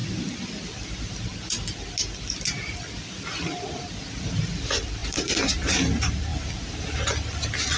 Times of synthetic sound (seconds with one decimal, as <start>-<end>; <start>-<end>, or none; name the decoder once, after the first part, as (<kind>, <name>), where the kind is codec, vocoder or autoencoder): 5.0-5.7 (vocoder, BigVGAN v2)